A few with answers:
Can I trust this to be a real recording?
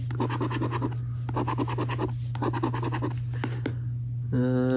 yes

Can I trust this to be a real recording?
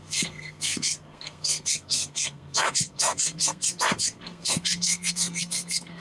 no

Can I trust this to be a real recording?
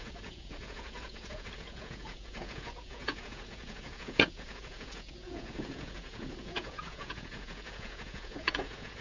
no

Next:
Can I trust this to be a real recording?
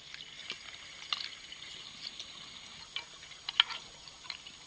yes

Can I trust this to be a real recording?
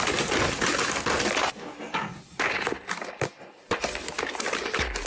yes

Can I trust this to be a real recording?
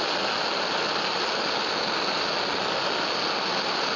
yes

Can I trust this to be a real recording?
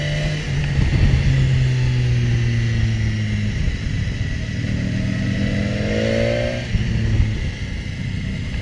yes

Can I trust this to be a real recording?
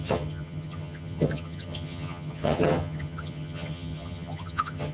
no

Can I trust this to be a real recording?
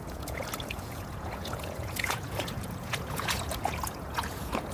no